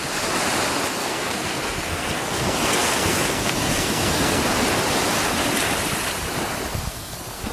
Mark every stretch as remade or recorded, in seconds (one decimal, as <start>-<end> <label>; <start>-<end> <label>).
0.0-1.0 recorded; 1.0-4.4 remade; 4.4-6.7 recorded; 6.7-7.5 remade